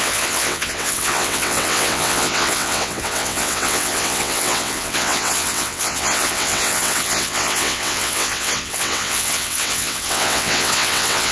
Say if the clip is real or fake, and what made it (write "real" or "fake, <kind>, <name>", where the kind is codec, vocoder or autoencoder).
fake, vocoder, WaveNeXt